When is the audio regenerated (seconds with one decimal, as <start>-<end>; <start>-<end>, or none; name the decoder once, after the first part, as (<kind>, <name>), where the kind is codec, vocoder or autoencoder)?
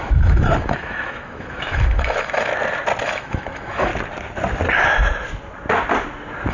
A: 0.0-2.5 (autoencoder, DAC-VAE); 3.0-3.9